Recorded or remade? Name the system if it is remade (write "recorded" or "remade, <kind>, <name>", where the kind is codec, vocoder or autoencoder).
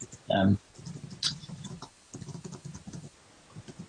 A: recorded